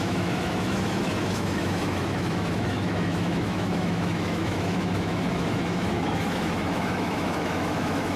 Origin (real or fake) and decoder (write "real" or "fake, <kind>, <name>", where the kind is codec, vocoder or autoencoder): fake, autoencoder, DAC-VAE